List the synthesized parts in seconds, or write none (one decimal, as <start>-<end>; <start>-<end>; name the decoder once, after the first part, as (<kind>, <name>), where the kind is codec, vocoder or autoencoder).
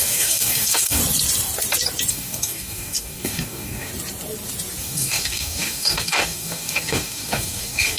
0.0-1.0 (codec, DAC); 2.1-3.9; 4.8-8.0